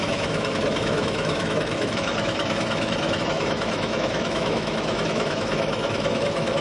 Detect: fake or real fake